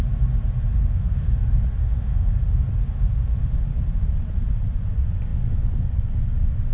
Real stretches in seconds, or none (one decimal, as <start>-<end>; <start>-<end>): 0.0-0.8; 1.4-1.8; 2.3-3.0; 3.6-6.7